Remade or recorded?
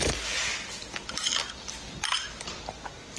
recorded